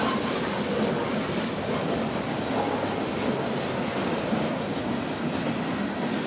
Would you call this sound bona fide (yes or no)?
yes